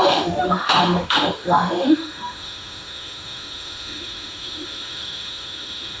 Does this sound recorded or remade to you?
remade